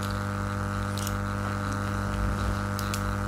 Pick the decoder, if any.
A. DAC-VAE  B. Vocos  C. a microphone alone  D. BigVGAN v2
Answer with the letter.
C